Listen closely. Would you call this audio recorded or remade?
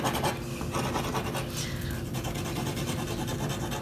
recorded